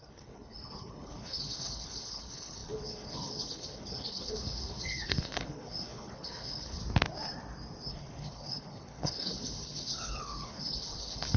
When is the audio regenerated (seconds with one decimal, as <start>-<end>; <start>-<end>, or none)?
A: 0.0-6.8; 7.9-11.4